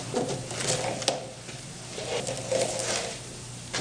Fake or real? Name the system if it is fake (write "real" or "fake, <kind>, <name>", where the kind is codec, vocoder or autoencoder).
real